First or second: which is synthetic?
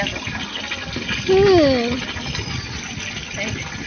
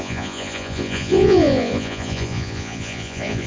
second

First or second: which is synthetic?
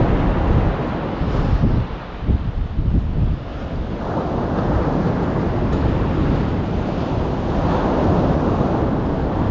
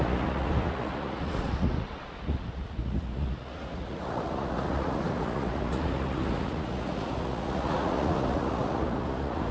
second